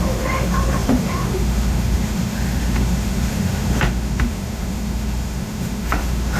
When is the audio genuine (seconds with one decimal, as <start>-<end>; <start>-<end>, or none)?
none